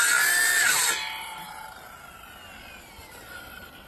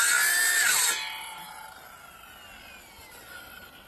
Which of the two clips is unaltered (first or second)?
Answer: second